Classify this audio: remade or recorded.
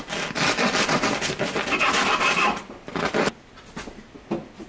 recorded